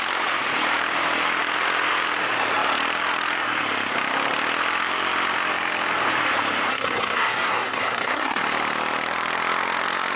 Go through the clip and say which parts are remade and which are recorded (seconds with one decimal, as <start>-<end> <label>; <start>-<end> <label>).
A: 0.0-6.7 recorded; 6.7-8.4 remade; 8.4-10.2 recorded